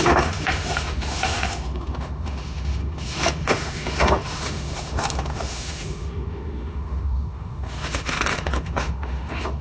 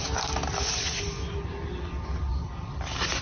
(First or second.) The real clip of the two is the second